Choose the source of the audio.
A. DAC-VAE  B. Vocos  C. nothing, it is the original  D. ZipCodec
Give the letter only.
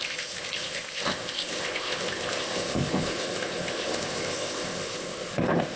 D